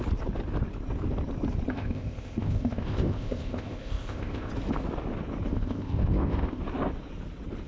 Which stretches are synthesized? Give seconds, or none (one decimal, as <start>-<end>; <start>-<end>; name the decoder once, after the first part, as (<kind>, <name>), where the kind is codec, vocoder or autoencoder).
1.7-4.5 (codec, ZipCodec); 5.5-6.6